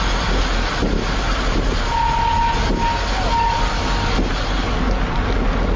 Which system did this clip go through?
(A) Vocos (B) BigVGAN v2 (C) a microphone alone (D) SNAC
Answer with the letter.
C